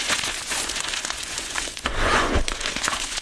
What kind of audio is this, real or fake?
fake